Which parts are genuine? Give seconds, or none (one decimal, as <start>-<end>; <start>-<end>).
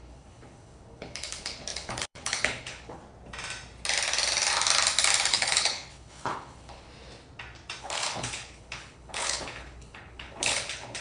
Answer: 3.0-5.3; 6.9-7.8